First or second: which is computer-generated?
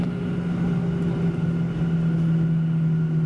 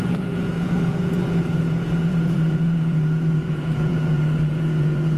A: second